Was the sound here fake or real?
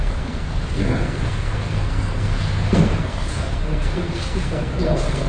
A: fake